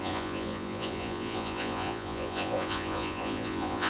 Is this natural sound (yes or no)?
no